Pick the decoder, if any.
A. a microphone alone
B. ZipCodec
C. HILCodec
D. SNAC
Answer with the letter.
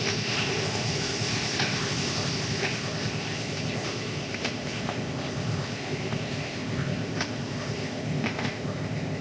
B